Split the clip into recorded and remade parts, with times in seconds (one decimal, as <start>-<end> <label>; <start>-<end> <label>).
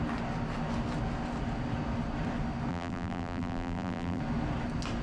0.0-2.7 recorded; 2.7-4.2 remade; 4.2-5.0 recorded